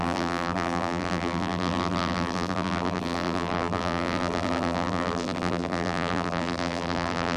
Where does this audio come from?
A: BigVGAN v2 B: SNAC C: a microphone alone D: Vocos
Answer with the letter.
A